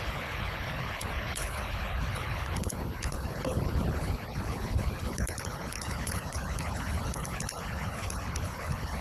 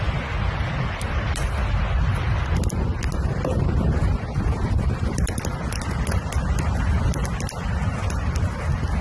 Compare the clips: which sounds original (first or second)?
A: second